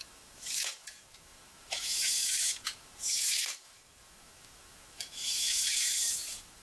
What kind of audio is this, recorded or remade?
remade